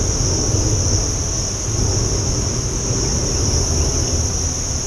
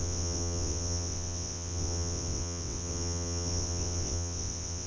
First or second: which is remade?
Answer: second